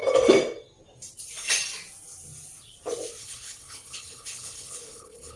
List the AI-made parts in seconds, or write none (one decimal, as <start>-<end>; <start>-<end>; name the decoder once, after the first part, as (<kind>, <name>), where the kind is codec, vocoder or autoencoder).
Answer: 3.2-5.4 (codec, HILCodec)